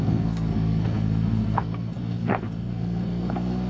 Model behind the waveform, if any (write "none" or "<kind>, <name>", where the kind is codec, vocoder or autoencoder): codec, SNAC